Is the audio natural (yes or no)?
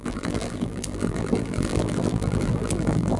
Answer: no